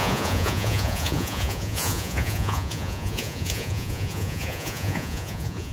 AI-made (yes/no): yes